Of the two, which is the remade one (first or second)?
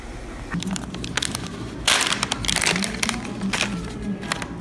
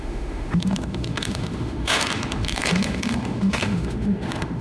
second